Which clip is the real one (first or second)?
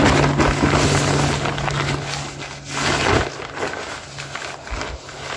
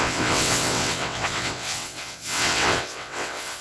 first